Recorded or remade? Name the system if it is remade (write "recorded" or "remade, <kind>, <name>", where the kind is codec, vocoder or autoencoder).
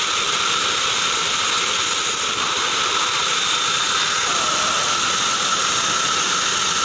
recorded